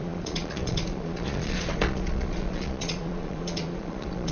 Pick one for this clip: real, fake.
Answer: fake